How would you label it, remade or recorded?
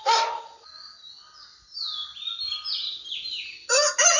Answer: recorded